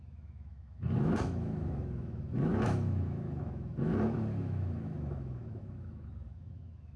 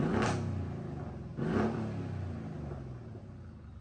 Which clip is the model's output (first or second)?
first